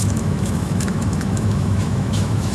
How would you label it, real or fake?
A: fake